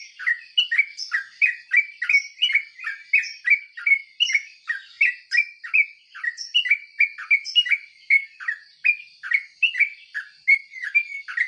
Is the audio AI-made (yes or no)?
no